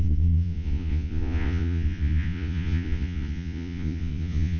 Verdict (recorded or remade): remade